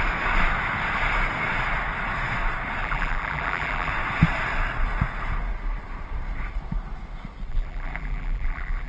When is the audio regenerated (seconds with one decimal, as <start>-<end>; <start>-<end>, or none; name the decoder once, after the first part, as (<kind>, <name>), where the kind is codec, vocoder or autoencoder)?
2.8-3.9 (vocoder, BigVGAN v2); 7.5-8.9